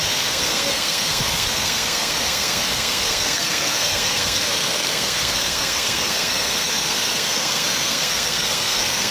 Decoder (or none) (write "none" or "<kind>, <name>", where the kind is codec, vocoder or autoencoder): codec, SNAC